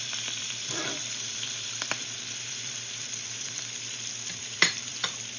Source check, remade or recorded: remade